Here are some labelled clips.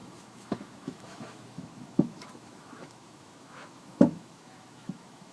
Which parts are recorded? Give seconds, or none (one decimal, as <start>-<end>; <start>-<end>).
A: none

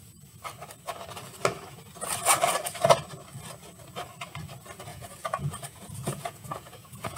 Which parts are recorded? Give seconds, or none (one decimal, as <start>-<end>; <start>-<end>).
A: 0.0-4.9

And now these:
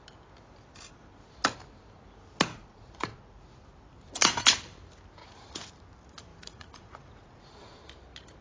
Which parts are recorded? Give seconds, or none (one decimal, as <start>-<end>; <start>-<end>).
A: 0.0-2.5; 3.2-5.2; 5.7-6.3; 7.7-8.4

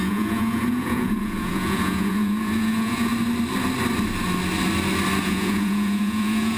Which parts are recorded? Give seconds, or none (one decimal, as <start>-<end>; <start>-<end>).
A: 3.1-5.2

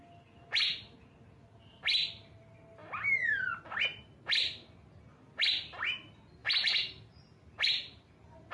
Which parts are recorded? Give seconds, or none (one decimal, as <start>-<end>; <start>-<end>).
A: 0.0-1.4; 2.4-2.8; 3.6-8.5